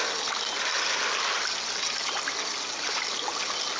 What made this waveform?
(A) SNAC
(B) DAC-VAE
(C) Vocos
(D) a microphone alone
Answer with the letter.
D